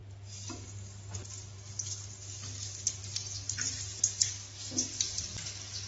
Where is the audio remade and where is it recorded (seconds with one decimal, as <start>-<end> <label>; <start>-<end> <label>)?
0.0-5.9 recorded